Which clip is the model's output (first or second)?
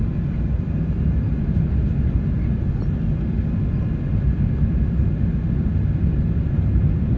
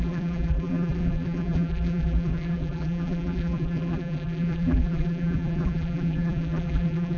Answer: second